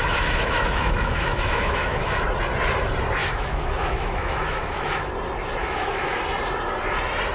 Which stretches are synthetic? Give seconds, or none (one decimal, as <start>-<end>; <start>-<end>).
0.0-2.2; 3.2-5.1; 5.6-6.2